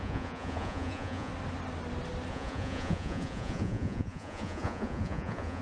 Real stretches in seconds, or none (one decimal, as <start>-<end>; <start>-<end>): 1.3-2.3